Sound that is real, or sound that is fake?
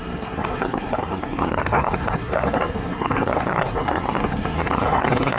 fake